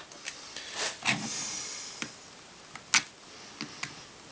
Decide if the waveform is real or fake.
real